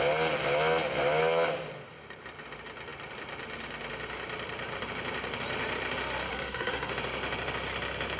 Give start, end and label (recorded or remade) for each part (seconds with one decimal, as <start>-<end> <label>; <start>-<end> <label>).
0.0-6.3 recorded; 6.3-6.9 remade; 6.9-8.2 recorded